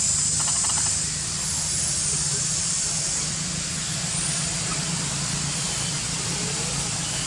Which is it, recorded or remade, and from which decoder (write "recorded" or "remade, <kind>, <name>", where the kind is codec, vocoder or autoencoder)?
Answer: recorded